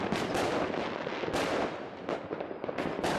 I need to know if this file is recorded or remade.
recorded